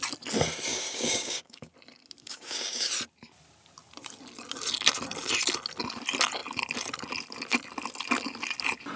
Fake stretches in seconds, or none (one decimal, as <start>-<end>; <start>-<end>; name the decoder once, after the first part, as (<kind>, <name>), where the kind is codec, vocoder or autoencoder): 0.7-1.7 (codec, DAC); 2.2-2.9